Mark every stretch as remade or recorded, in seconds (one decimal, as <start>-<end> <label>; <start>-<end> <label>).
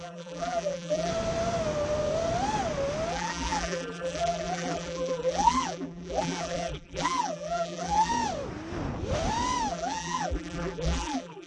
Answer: 0.0-1.1 remade; 1.1-3.1 recorded; 3.1-8.1 remade; 8.1-9.7 recorded; 9.7-11.5 remade